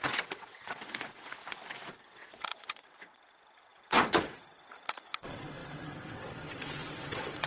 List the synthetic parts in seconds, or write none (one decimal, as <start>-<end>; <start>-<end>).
0.0-1.4; 2.0-7.5